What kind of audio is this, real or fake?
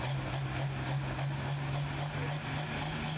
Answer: real